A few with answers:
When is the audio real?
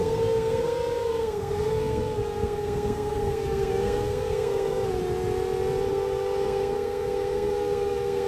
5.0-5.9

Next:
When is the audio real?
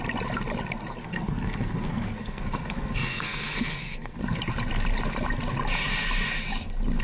0.0-1.0; 4.2-7.0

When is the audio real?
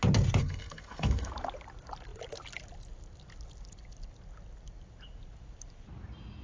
0.0-0.4; 1.3-6.4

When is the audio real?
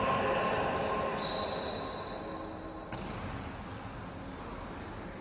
0.0-5.2